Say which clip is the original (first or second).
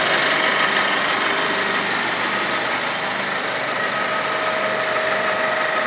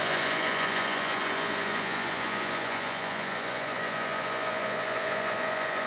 first